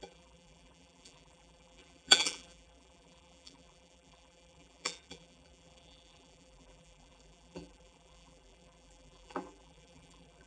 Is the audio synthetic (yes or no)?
yes